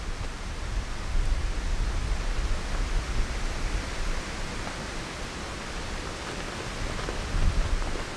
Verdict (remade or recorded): recorded